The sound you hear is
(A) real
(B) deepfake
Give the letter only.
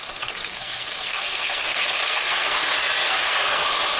B